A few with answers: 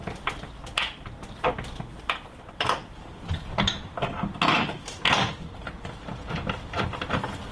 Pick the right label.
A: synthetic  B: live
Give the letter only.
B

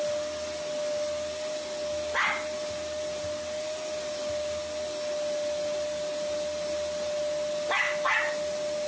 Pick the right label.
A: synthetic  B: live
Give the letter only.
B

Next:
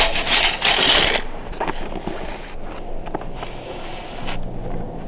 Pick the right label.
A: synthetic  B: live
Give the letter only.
B